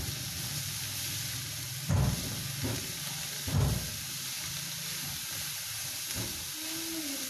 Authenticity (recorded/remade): recorded